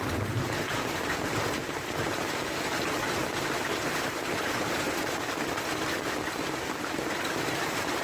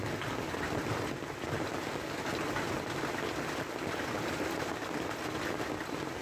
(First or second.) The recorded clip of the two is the second